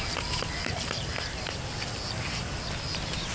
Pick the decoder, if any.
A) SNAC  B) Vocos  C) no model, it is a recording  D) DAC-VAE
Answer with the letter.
C